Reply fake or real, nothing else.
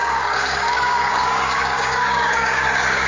fake